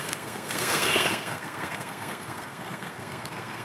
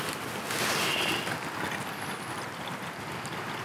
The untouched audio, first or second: second